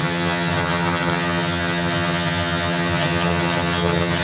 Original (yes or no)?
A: no